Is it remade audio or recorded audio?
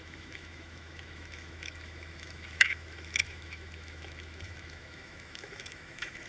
remade